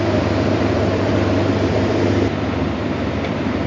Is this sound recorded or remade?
remade